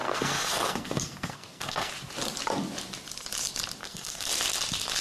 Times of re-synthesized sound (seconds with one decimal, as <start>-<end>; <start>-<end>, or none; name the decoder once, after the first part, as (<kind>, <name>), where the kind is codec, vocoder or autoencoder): 0.0-1.9 (codec, SNAC); 3.8-4.3

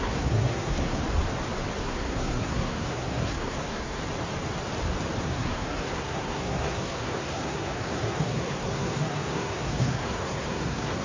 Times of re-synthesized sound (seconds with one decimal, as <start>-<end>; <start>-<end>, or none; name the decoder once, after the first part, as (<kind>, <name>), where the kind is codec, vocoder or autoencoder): 0.0-1.0 (codec, SNAC); 1.8-4.0; 5.2-11.0

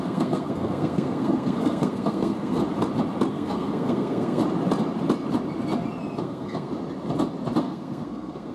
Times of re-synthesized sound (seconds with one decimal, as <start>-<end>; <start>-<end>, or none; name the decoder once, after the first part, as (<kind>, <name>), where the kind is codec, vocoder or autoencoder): 0.0-2.6 (codec, SNAC); 3.3-4.4; 6.2-6.7; 7.6-8.5

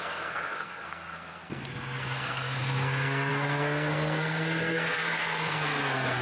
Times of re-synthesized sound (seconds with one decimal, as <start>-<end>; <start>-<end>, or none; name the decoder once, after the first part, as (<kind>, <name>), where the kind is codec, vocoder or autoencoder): 0.0-6.2 (codec, SNAC)